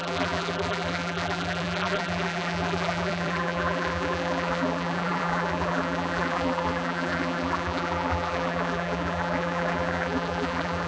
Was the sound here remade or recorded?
remade